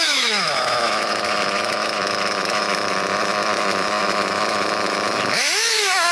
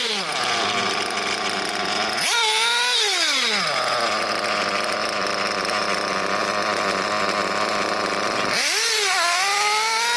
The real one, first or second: second